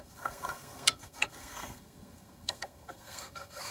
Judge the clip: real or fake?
fake